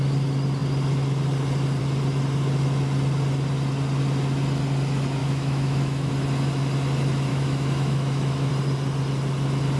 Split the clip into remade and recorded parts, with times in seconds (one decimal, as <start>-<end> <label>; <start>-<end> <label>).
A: 0.0-5.2 recorded; 5.2-6.1 remade; 6.1-7.3 recorded; 7.3-8.5 remade; 8.5-9.8 recorded